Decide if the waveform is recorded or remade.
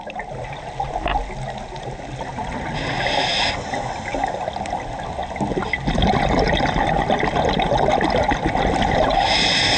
recorded